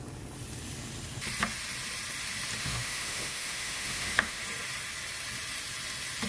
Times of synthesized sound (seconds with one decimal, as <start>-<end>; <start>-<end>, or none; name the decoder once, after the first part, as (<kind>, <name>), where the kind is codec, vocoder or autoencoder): 2.6-4.4 (autoencoder, DAC-VAE)